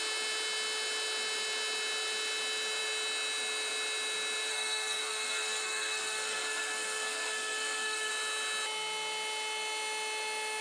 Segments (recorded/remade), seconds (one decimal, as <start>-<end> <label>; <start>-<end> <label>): 0.0-4.5 recorded; 4.5-8.1 remade; 8.1-10.6 recorded